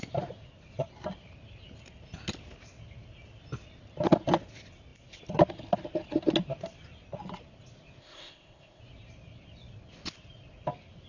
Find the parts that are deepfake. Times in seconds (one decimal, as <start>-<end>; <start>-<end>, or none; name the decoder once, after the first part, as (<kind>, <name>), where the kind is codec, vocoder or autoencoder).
8.0-8.8 (codec, ZipCodec)